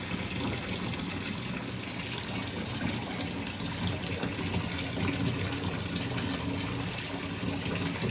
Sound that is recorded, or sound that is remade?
recorded